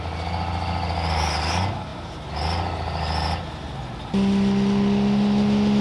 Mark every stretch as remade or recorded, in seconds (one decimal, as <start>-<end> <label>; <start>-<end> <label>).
0.0-5.8 recorded